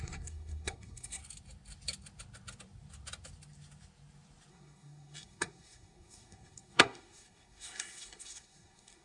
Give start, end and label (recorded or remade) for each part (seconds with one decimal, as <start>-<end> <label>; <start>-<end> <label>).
0.0-1.2 remade; 1.2-4.5 recorded; 4.5-9.0 remade